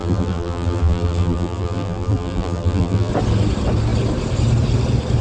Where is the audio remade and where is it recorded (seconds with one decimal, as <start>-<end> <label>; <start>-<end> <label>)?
0.0-3.1 remade; 3.1-5.2 recorded